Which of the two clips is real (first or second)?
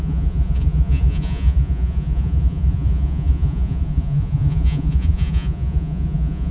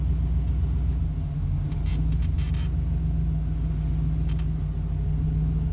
second